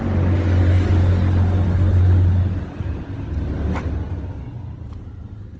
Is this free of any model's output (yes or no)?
yes